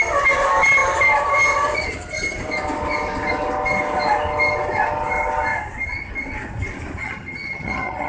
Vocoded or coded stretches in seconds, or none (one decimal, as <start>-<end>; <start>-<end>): 7.0-8.1